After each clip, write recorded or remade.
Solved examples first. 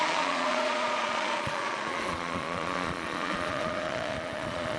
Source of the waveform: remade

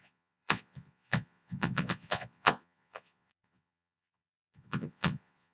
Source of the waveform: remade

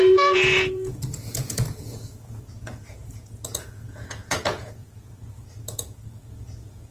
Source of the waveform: remade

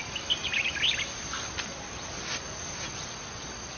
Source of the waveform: recorded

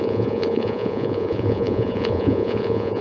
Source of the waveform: remade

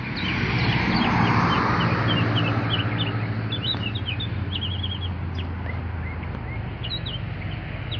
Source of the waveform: recorded